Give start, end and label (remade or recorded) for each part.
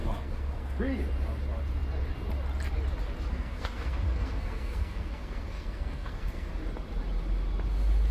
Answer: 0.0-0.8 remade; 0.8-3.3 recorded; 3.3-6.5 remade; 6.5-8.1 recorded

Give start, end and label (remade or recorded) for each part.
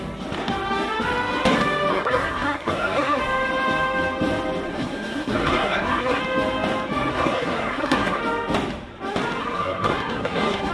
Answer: 0.0-1.9 recorded; 1.9-3.2 remade; 3.2-4.7 recorded; 4.7-6.2 remade; 6.2-7.1 recorded; 7.1-8.2 remade; 8.2-9.4 recorded; 9.4-10.7 remade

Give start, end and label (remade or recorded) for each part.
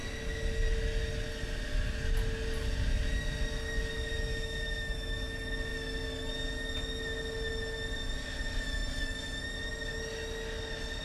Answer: 0.0-4.3 recorded; 4.3-5.3 remade; 5.3-11.0 recorded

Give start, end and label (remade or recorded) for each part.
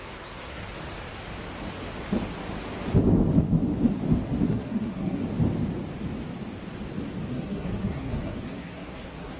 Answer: 0.0-0.6 remade; 0.6-4.5 recorded; 4.5-5.2 remade; 5.2-7.3 recorded; 7.3-9.4 remade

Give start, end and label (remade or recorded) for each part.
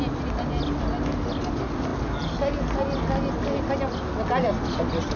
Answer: 0.0-5.2 recorded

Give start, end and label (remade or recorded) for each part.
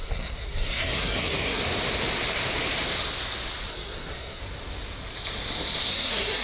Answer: 0.0-1.6 remade; 1.6-3.7 recorded; 3.7-4.4 remade; 4.4-5.9 recorded; 5.9-6.4 remade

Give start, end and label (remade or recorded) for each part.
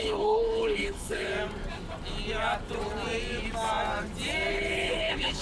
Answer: 0.0-1.3 remade; 1.3-4.5 recorded; 4.5-5.4 remade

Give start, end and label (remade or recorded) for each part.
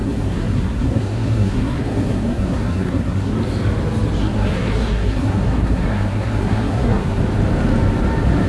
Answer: 0.0-3.3 remade; 3.3-4.2 recorded; 4.2-7.2 remade; 7.2-8.5 recorded